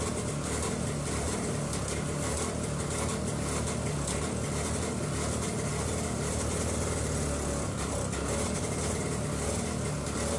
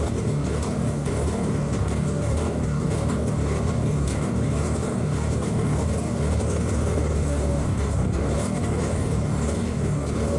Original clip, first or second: first